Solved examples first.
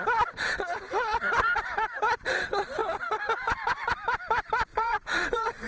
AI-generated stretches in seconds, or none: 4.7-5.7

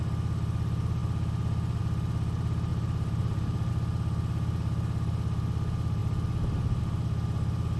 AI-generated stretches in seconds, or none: 2.7-3.7

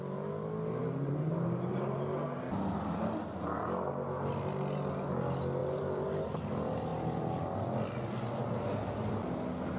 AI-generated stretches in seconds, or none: none

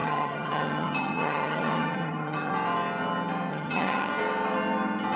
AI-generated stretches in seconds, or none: 0.0-2.5; 3.5-4.1

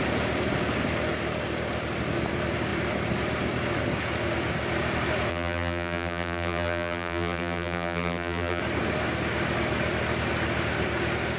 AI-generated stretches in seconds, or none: 5.3-8.6

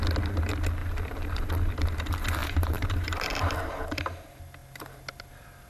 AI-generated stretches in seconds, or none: 0.8-1.5; 2.4-3.7

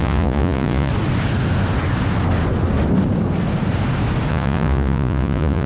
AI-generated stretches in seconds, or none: 0.0-0.9; 4.3-5.7